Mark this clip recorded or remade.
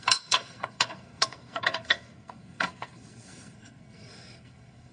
remade